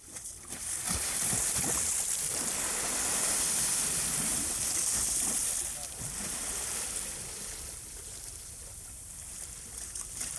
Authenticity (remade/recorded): recorded